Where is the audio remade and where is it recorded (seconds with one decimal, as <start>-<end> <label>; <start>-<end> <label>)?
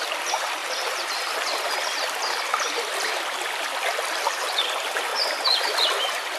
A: 0.0-6.4 recorded